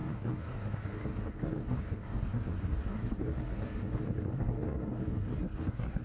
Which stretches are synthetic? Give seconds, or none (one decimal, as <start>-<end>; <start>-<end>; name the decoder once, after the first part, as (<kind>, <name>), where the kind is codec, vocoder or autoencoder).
0.0-6.0 (codec, SNAC)